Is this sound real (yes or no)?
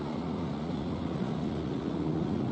no